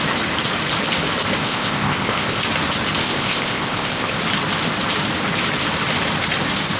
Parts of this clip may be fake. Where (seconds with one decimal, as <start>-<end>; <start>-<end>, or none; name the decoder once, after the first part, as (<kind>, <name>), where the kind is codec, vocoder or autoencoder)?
1.4-2.5 (codec, ZipCodec); 3.0-4.2